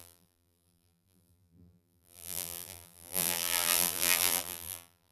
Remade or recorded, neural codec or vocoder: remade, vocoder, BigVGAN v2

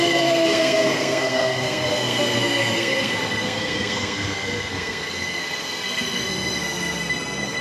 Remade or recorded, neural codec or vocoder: remade, codec, SNAC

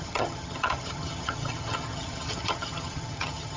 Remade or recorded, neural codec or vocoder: remade, vocoder, HiFi-GAN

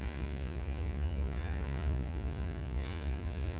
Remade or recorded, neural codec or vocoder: remade, vocoder, Vocos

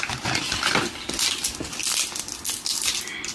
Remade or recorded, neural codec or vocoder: recorded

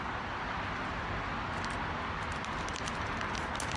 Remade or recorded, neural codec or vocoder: recorded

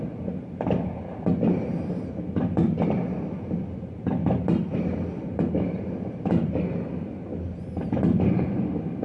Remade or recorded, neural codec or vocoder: recorded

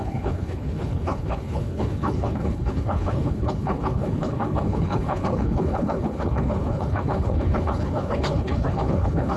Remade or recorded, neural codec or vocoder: remade, codec, HILCodec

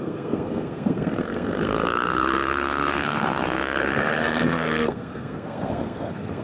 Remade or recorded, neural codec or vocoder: remade, codec, SNAC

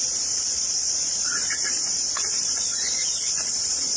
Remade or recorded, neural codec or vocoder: remade, vocoder, Vocos